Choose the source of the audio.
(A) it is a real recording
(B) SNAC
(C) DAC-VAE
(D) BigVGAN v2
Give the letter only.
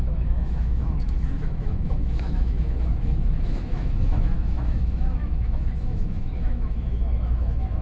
C